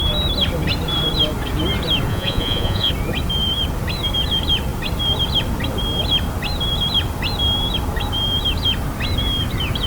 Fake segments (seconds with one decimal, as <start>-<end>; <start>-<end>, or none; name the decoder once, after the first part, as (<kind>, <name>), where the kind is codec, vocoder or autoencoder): 2.1-2.9 (vocoder, Vocos)